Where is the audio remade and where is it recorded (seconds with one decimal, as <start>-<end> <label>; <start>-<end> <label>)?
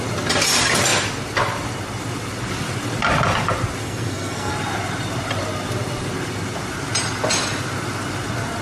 0.0-3.8 recorded; 3.8-4.5 remade; 4.5-8.6 recorded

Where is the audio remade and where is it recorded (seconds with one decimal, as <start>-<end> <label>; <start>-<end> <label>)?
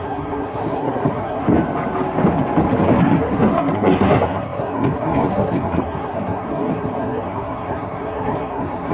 0.0-1.4 remade; 1.4-3.0 recorded; 3.0-8.9 remade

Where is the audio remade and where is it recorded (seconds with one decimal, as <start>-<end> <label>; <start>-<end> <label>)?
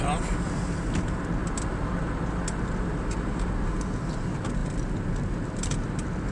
0.0-6.3 recorded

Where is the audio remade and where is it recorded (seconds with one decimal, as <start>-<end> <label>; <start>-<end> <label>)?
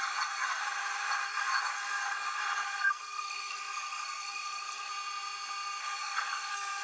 0.0-0.6 remade; 0.6-1.3 recorded; 1.3-4.9 remade; 4.9-5.8 recorded; 5.8-6.8 remade